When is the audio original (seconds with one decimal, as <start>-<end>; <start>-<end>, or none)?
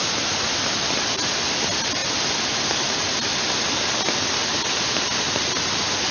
0.0-6.1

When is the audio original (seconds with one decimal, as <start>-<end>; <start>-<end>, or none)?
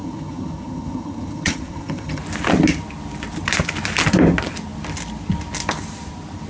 2.2-6.5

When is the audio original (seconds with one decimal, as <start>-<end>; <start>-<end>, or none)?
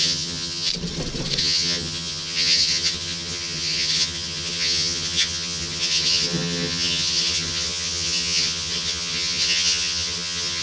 0.7-1.4